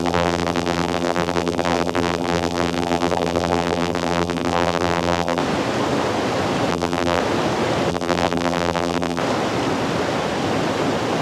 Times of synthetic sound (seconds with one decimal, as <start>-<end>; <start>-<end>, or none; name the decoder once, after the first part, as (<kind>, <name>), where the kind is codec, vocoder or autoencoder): 0.0-5.4 (vocoder, BigVGAN v2); 6.7-7.2; 7.9-9.2